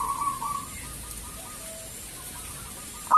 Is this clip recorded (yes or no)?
yes